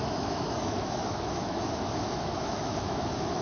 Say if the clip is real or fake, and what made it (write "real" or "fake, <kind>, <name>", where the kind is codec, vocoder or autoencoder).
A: fake, autoencoder, DAC-VAE